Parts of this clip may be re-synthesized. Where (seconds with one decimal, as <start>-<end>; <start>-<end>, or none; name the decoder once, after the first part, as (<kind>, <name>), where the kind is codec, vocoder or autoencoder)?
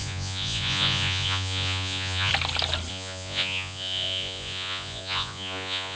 0.0-2.3 (vocoder, Vocos); 2.9-6.0